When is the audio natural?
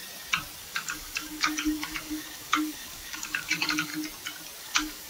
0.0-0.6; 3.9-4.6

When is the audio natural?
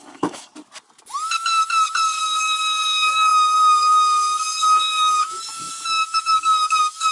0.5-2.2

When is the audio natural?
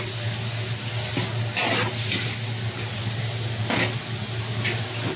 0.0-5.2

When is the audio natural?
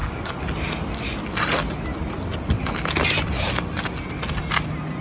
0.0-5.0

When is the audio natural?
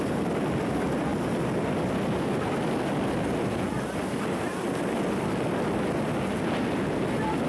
0.0-7.5